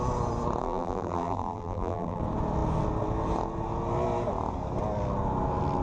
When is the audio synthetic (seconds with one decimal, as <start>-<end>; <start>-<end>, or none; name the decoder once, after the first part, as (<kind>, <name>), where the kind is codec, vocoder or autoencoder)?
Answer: 0.6-2.2 (vocoder, BigVGAN v2)